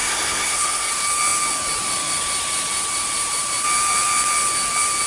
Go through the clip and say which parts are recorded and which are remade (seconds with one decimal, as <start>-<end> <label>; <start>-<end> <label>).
0.0-0.9 remade; 0.9-5.1 recorded